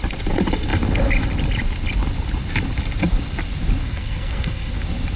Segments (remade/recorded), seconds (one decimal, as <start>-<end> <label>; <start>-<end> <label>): 0.0-3.8 recorded; 3.8-4.7 remade; 4.7-5.2 recorded